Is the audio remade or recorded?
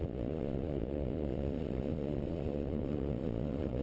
remade